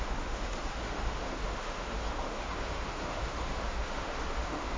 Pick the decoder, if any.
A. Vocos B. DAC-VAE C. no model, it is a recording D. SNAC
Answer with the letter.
B